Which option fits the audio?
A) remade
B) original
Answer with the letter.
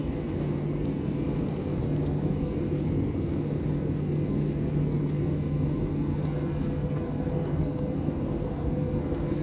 A